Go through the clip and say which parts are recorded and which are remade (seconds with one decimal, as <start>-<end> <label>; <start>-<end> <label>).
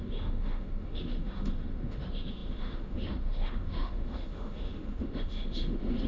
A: 0.0-6.1 remade